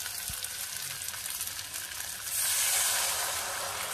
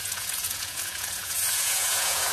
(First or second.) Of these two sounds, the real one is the first